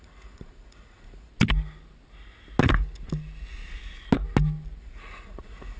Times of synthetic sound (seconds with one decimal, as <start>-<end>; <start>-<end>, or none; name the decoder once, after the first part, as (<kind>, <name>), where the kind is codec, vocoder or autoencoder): 0.0-1.3 (vocoder, Vocos); 4.8-5.8